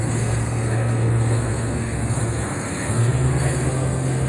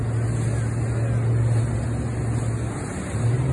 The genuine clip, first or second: second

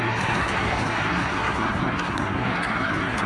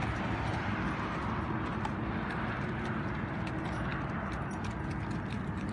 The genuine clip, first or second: second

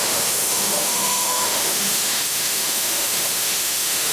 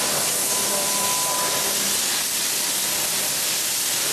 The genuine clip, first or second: second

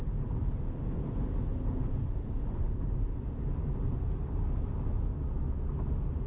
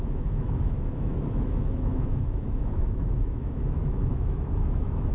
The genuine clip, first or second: first